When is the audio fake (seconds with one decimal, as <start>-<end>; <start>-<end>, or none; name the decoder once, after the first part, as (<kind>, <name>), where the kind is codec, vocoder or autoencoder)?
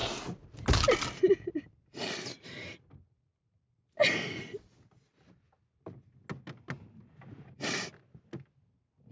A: none